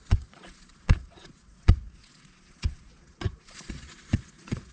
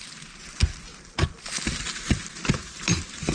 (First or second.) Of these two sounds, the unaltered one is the second